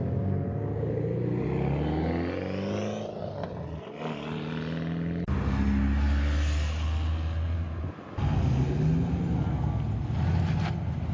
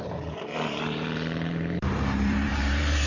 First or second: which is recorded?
first